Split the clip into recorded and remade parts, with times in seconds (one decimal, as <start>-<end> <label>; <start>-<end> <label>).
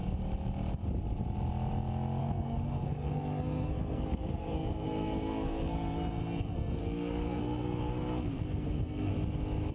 0.0-2.2 recorded; 2.2-9.1 remade; 9.1-9.7 recorded